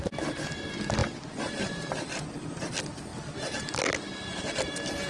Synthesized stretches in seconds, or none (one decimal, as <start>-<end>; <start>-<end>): none